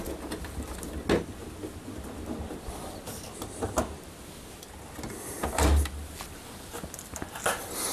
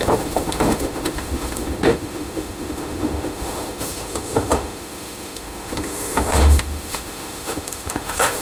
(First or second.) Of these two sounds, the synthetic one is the second